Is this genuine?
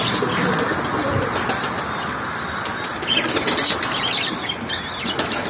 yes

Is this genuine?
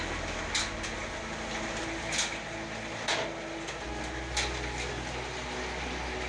yes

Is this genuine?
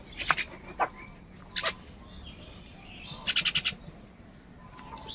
yes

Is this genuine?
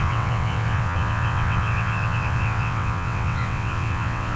no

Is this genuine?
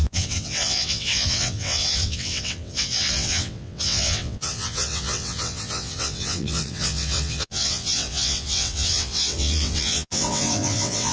no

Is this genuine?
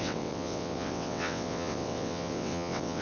no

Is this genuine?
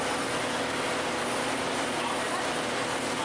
yes